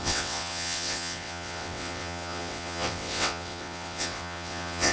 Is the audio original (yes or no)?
no